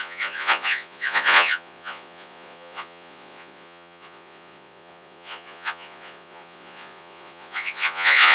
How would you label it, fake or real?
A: fake